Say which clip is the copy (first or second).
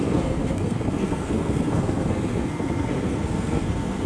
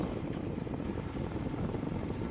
first